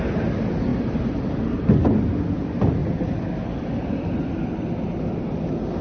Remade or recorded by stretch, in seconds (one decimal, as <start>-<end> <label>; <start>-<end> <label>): 0.0-0.7 recorded; 0.7-1.5 remade; 1.5-2.8 recorded; 2.8-4.3 remade; 4.3-5.8 recorded